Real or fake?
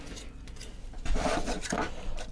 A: real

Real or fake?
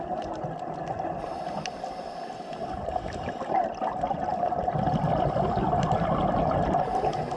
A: real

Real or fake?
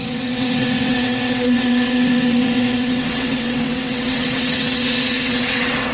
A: fake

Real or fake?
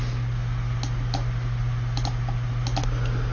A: real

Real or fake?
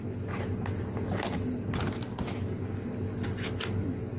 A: real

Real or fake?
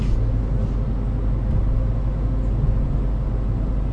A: real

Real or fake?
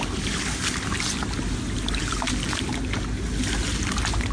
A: real